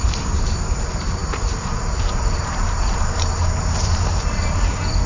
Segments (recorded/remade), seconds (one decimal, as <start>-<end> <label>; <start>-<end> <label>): 0.0-5.1 remade